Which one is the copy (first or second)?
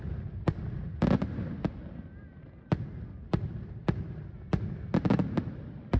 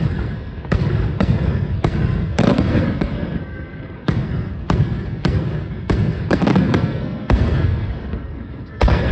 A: second